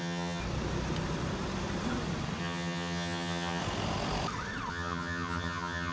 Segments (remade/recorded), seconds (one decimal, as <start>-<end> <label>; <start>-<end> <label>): 0.0-0.4 remade; 0.4-2.4 recorded; 2.4-3.6 remade; 3.6-4.7 recorded; 4.7-5.9 remade